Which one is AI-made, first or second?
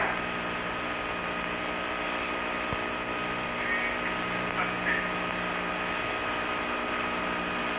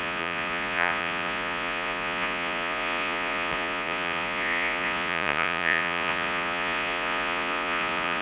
second